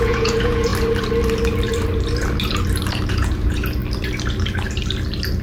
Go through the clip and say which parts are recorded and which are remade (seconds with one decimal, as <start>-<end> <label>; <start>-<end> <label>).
0.0-0.7 remade; 0.7-3.1 recorded; 3.1-3.8 remade; 3.8-5.4 recorded